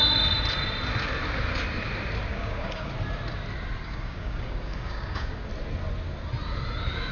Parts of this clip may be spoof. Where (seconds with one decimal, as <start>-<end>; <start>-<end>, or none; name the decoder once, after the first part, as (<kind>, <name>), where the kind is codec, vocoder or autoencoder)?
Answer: 2.3-2.9 (codec, DAC); 3.8-5.5